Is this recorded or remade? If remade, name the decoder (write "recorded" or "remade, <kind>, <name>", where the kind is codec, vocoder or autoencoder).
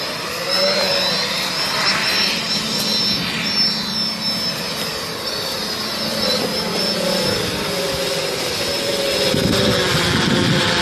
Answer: recorded